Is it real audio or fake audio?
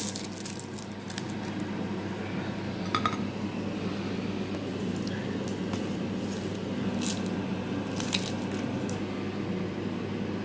real